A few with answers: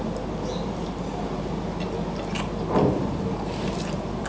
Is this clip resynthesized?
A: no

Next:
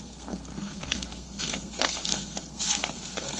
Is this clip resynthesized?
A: yes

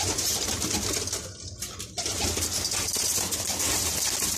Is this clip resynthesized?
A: no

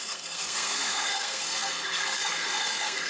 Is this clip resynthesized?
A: yes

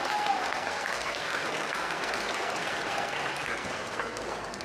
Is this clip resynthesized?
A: yes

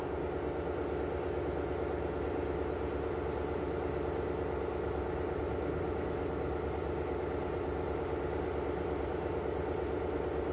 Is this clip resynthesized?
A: no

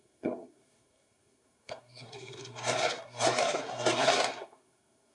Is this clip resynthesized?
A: yes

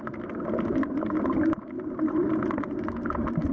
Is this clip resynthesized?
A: no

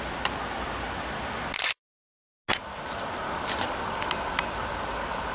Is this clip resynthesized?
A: no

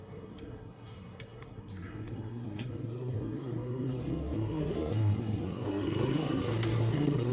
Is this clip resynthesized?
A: yes